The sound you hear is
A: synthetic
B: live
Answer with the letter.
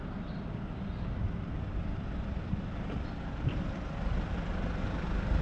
B